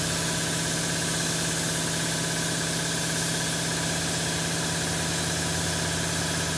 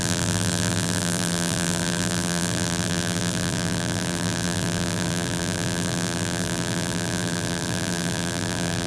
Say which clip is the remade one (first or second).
second